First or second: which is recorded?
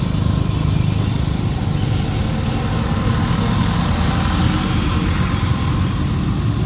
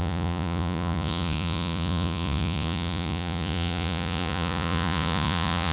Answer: first